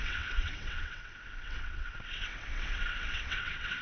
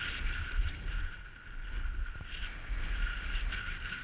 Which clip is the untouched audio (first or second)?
second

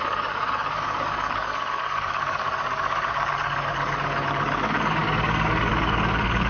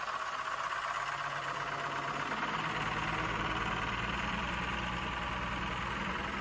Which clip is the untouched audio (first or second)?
second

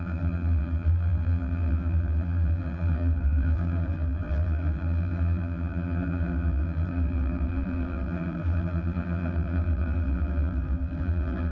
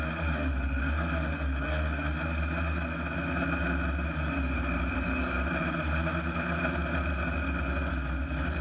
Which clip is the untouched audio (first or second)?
second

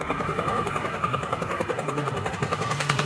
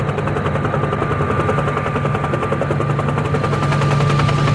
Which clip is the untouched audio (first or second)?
second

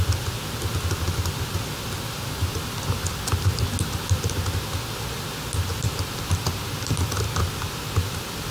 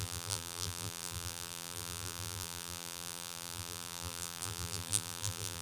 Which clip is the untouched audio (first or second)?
first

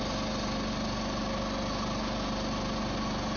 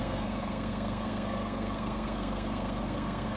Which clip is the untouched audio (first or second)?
first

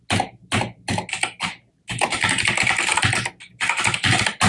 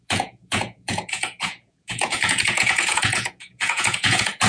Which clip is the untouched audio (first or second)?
first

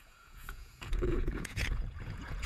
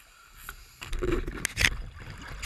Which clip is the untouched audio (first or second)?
second